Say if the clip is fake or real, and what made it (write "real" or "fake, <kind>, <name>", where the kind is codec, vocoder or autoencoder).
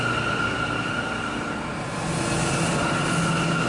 real